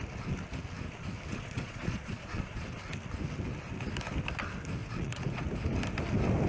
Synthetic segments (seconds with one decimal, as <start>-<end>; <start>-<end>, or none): 1.3-2.8; 4.8-5.4